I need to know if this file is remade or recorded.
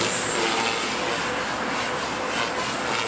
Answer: recorded